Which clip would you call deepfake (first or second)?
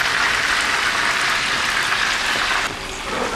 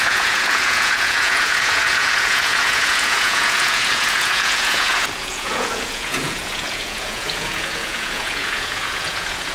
second